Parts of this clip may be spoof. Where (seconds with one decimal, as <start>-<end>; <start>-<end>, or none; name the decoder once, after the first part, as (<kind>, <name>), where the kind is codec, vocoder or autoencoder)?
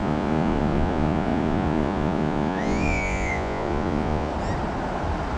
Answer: 0.0-4.3 (vocoder, Vocos)